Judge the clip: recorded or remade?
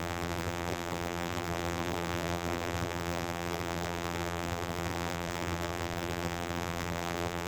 remade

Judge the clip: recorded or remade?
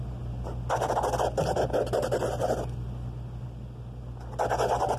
recorded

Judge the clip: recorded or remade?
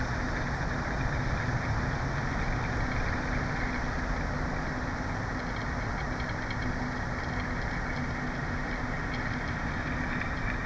recorded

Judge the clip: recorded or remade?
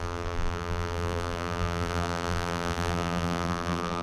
remade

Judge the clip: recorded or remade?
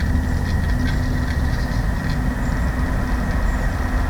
recorded